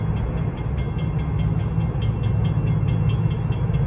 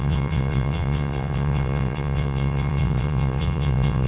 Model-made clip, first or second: second